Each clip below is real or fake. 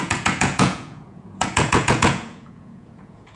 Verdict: fake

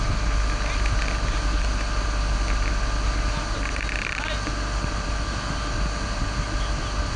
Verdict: real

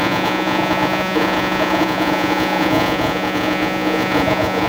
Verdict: fake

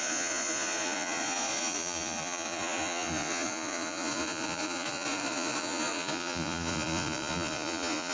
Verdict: fake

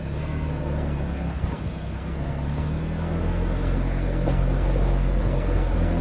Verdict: fake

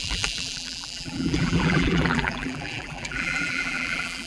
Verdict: fake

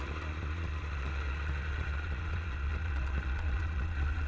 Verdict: fake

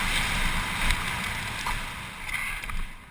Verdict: real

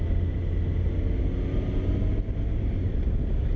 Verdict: real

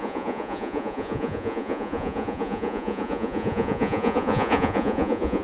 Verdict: fake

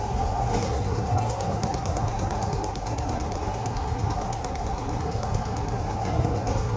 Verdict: fake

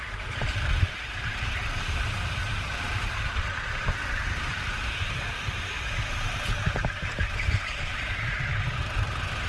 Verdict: fake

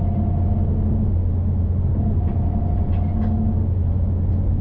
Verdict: real